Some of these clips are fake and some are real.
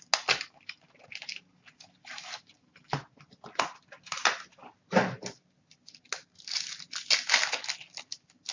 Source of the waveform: real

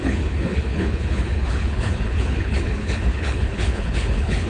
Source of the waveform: fake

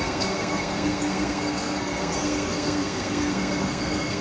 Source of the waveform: fake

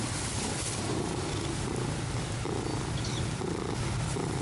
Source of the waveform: real